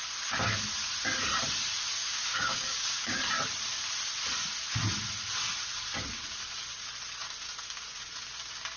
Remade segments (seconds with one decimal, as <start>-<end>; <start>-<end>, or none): 2.0-3.2